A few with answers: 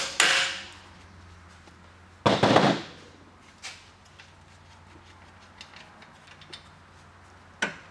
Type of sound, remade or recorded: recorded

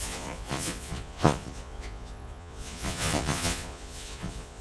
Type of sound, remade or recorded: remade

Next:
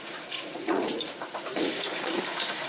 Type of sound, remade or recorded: remade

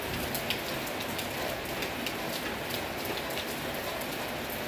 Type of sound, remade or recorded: recorded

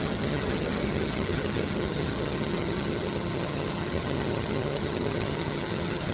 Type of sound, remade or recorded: remade